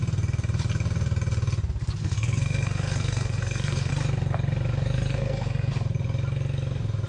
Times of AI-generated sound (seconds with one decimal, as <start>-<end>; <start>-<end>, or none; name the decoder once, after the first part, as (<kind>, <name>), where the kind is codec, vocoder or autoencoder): 2.0-3.9 (codec, SNAC); 5.1-5.7